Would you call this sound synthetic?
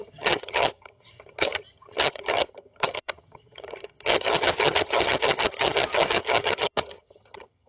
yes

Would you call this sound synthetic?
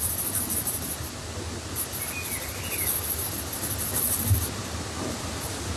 no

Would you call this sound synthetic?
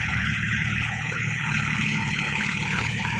yes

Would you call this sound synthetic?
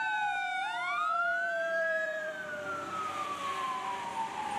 yes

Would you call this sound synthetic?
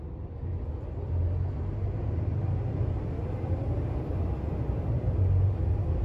no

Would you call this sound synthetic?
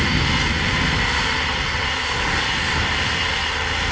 no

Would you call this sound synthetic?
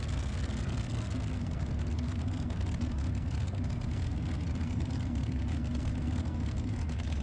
yes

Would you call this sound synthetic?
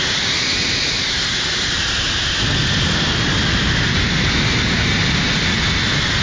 no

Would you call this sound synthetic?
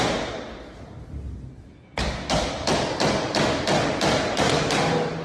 no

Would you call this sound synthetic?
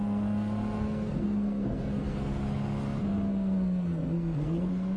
yes